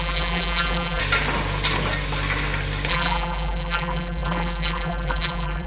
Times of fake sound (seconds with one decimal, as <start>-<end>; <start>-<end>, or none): 0.0-1.0; 2.9-5.7